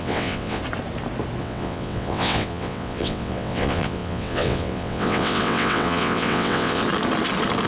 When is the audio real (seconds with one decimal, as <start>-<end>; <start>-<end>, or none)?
0.6-1.4; 6.8-7.7